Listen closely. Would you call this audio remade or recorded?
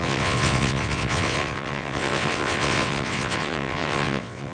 remade